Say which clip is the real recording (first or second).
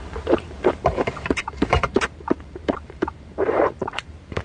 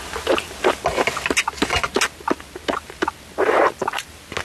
second